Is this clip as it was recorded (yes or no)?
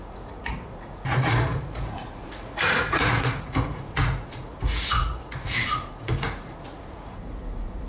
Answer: no